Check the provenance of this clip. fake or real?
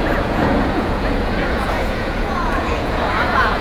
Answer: fake